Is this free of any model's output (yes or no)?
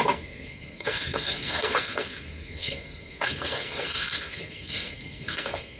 no